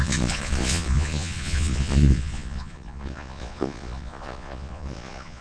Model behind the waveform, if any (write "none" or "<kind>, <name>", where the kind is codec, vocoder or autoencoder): vocoder, Vocos